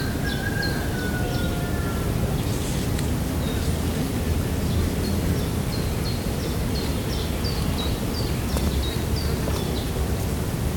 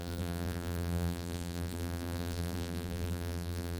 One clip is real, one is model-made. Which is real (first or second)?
first